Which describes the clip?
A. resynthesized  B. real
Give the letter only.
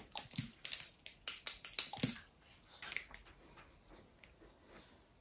B